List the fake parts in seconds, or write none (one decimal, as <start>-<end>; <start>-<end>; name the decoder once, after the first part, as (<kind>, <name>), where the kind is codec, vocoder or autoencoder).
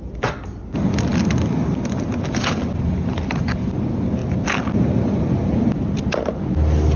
none